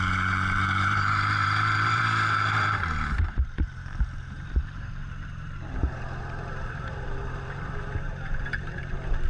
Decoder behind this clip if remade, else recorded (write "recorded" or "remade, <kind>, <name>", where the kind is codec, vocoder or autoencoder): remade, vocoder, BigVGAN v2